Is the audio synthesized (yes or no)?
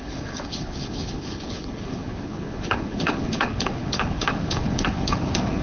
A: yes